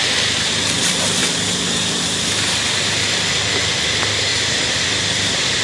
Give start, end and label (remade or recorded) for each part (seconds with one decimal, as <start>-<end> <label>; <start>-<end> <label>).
0.0-4.3 recorded; 4.3-5.6 remade